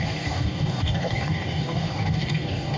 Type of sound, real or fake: fake